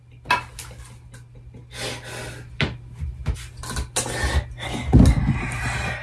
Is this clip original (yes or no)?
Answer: yes